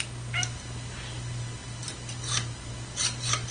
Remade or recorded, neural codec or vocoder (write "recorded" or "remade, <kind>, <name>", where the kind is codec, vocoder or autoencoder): recorded